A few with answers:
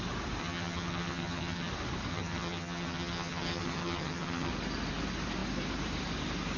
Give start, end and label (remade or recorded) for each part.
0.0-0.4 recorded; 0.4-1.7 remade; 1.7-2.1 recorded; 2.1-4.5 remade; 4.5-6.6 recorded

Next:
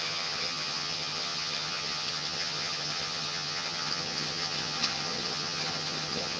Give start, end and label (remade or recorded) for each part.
0.0-6.4 remade

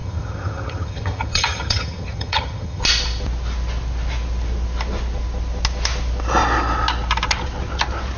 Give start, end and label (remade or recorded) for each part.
0.0-2.8 remade; 2.8-8.2 recorded

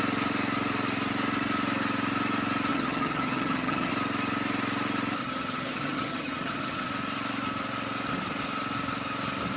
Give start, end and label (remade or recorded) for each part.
0.0-2.7 recorded; 2.7-3.9 remade; 3.9-5.2 recorded; 5.2-6.9 remade; 6.9-9.6 recorded

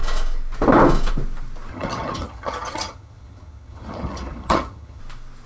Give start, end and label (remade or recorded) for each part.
0.0-1.7 recorded; 1.7-5.0 remade; 5.0-5.5 recorded

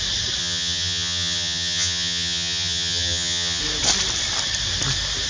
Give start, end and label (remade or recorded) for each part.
0.0-0.4 recorded; 0.4-3.6 remade; 3.6-5.3 recorded